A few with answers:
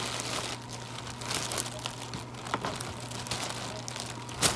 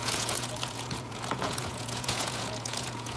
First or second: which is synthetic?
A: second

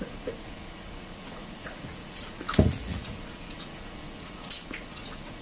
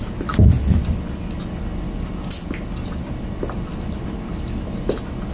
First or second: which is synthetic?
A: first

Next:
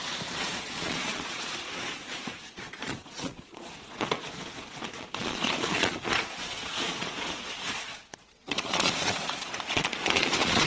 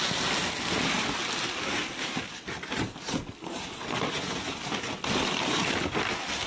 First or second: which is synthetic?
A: first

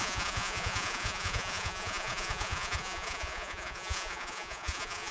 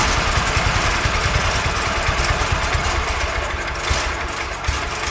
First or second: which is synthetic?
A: first